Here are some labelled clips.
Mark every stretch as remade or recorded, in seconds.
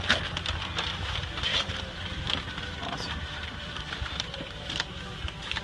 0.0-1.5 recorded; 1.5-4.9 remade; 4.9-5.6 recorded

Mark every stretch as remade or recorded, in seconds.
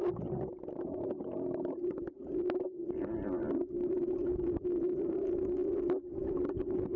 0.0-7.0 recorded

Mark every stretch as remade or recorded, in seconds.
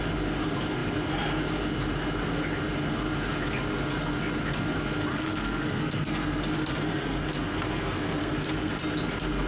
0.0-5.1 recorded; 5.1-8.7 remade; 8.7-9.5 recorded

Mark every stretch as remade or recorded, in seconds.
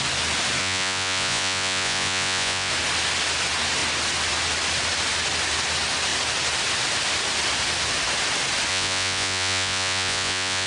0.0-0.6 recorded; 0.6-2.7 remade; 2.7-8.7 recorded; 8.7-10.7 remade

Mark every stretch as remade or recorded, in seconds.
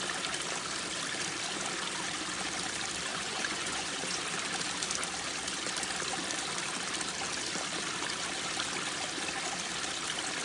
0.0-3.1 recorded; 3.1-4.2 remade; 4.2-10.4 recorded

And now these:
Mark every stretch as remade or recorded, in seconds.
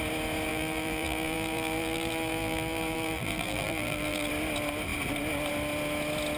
0.0-0.5 recorded; 0.5-4.3 remade; 4.3-6.4 recorded